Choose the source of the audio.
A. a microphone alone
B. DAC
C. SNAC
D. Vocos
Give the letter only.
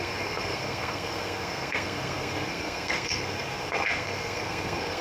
C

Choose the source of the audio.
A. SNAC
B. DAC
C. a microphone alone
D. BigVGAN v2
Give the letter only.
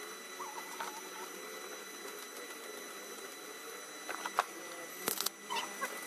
C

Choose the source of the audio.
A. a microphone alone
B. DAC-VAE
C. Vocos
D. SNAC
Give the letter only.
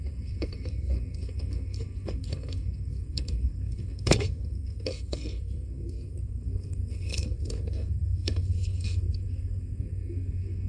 D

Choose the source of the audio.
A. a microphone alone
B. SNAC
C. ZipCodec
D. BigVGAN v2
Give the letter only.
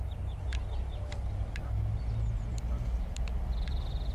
A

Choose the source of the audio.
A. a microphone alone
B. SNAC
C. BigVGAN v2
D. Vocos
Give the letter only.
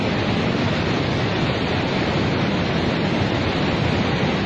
A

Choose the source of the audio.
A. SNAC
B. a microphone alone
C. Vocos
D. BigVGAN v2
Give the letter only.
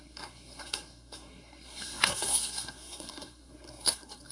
A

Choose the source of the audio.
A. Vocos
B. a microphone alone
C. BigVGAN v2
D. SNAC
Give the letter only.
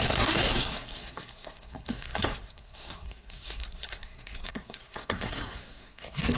D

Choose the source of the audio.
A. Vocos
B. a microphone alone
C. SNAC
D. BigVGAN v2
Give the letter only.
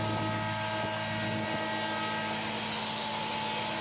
B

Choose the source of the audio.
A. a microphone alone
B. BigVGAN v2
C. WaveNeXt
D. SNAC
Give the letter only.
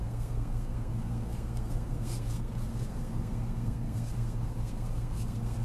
D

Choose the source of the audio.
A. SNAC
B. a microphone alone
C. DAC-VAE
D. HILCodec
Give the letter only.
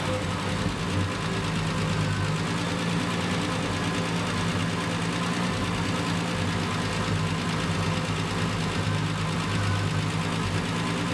B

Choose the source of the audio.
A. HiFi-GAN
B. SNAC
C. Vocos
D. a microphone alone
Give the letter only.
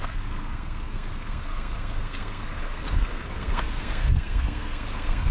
B